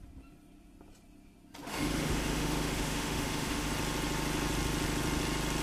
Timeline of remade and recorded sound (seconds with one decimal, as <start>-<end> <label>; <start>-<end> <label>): 0.0-1.7 recorded; 1.7-3.7 remade; 3.7-5.6 recorded